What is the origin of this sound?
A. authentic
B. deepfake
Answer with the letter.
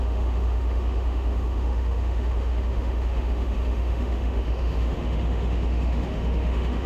B